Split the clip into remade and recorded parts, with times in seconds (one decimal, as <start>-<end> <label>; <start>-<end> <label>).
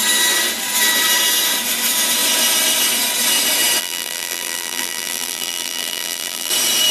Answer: 0.0-3.8 recorded; 3.8-6.5 remade; 6.5-6.9 recorded